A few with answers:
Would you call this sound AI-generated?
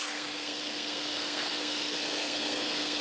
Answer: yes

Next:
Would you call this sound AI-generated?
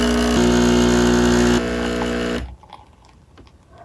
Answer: no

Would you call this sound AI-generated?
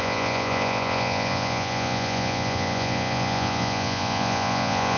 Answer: yes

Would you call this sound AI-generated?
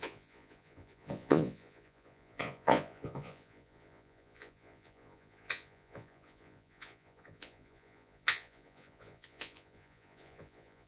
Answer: yes